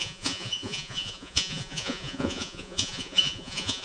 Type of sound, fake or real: fake